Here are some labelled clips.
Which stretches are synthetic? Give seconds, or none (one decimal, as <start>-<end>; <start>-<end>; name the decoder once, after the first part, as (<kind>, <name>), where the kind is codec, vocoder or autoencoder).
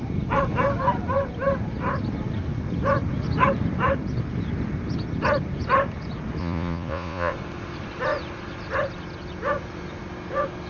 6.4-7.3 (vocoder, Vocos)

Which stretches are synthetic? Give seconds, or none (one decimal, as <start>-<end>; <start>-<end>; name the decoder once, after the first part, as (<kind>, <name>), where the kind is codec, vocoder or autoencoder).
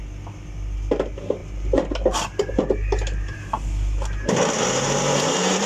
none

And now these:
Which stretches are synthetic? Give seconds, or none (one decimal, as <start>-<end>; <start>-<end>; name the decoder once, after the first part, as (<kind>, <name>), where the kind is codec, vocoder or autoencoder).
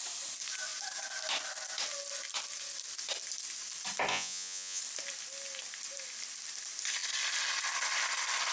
4.1-4.8 (vocoder, Vocos)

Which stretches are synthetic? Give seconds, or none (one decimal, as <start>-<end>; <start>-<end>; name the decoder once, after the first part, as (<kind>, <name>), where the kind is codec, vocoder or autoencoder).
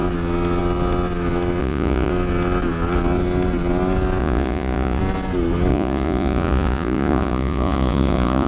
1.6-2.1 (vocoder, Vocos); 4.2-5.0; 5.7-8.5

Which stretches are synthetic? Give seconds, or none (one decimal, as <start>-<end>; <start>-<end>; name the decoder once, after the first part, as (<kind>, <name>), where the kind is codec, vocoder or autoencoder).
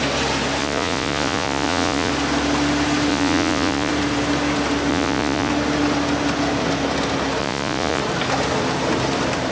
0.6-2.1 (vocoder, Vocos); 3.1-3.9; 4.9-5.5; 7.4-8.0